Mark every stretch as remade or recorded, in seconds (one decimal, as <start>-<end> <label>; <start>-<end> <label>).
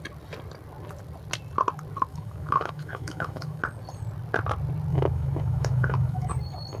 0.0-2.1 recorded; 2.1-3.6 remade; 3.6-4.9 recorded; 4.9-6.3 remade; 6.3-6.8 recorded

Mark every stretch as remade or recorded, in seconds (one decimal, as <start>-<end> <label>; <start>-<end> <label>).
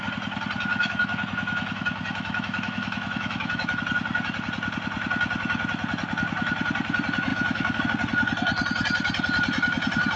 0.0-0.7 recorded; 0.7-3.8 remade; 3.8-7.3 recorded; 7.3-7.8 remade; 7.8-10.2 recorded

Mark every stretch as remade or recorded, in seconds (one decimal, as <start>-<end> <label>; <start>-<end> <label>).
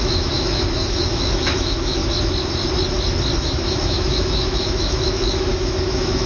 0.0-2.0 remade; 2.0-3.4 recorded; 3.4-6.3 remade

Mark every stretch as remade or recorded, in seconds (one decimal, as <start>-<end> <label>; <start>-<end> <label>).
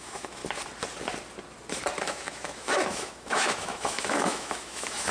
0.0-0.4 remade; 0.4-2.0 recorded; 2.0-5.1 remade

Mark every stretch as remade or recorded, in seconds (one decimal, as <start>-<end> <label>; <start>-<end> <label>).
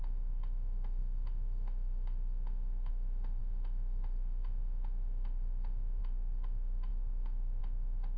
0.0-8.2 remade